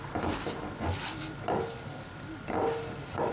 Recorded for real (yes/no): no